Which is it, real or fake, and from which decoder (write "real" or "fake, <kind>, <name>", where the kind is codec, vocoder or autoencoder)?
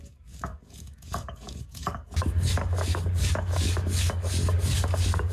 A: fake, codec, DAC